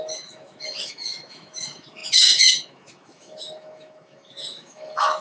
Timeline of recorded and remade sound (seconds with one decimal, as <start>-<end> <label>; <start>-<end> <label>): 0.0-5.2 remade